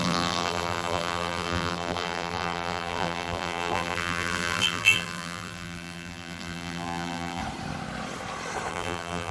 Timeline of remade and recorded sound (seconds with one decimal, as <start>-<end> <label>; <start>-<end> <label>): 0.0-7.4 remade; 7.4-8.7 recorded; 8.7-9.3 remade